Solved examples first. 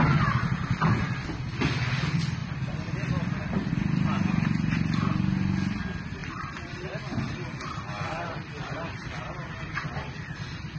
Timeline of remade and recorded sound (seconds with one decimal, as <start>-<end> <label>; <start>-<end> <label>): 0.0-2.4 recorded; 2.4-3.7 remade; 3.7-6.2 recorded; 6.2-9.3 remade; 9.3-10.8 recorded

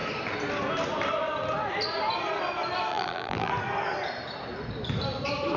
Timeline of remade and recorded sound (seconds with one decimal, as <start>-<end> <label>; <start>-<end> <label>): 0.0-2.9 recorded; 2.9-3.5 remade; 3.5-5.6 recorded

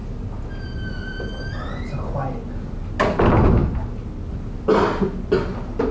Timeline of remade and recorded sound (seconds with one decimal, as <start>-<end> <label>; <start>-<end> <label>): 0.0-5.9 recorded